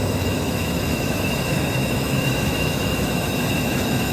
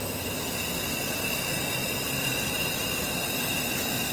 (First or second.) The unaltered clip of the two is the second